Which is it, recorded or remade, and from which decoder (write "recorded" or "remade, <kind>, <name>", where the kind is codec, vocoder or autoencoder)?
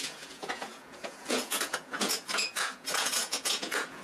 remade, vocoder, Vocos